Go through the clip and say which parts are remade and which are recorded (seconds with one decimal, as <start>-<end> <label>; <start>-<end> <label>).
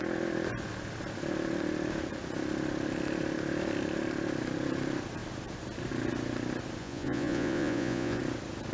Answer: 0.0-6.8 recorded; 6.8-8.2 remade; 8.2-8.7 recorded